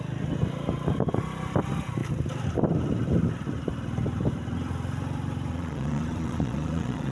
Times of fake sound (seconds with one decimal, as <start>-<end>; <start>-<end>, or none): 5.5-7.1